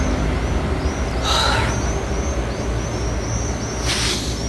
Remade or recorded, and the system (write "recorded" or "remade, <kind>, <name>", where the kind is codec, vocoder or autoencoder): recorded